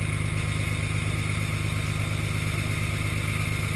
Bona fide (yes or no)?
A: yes